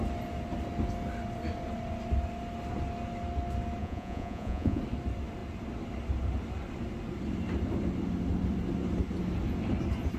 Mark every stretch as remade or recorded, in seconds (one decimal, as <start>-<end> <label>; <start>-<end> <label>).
0.0-3.8 recorded; 3.8-4.8 remade; 4.8-10.2 recorded